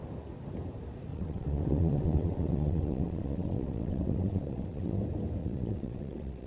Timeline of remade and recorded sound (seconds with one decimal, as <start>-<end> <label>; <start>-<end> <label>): 0.0-1.1 recorded; 1.1-5.0 remade; 5.0-5.4 recorded; 5.4-6.5 remade

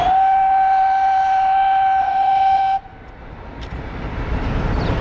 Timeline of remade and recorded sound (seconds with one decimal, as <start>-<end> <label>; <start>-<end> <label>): 0.0-2.0 recorded; 2.0-2.6 remade; 2.6-5.0 recorded

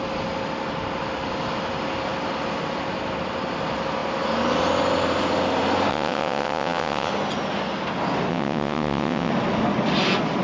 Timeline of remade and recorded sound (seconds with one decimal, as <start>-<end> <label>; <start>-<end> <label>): 0.0-5.9 recorded; 5.9-7.1 remade; 7.1-8.3 recorded; 8.3-9.3 remade; 9.3-10.4 recorded

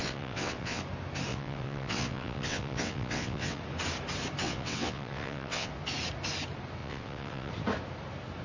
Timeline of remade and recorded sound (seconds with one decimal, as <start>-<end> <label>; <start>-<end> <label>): 0.0-0.8 remade; 0.8-1.3 recorded; 1.3-3.6 remade; 3.6-4.4 recorded; 4.4-5.7 remade; 5.7-6.8 recorded; 6.8-7.5 remade; 7.5-8.4 recorded

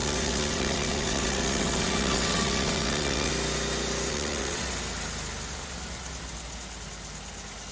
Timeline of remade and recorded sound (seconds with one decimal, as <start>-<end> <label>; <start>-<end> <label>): 0.0-3.3 remade; 3.3-4.1 recorded; 4.1-4.7 remade; 4.7-7.7 recorded

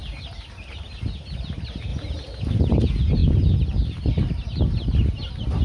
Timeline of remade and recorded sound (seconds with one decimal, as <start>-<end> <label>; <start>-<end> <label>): 0.0-5.6 recorded

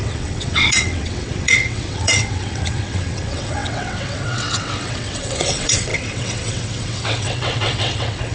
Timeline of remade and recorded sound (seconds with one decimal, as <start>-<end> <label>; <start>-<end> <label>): 0.0-8.3 remade